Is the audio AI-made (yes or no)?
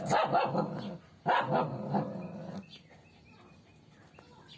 no